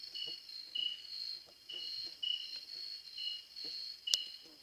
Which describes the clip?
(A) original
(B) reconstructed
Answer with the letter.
A